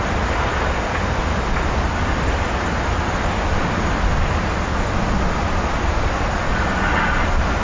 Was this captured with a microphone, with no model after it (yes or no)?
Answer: yes